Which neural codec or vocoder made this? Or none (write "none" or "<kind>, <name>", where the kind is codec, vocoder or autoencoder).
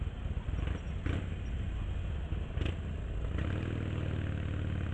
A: none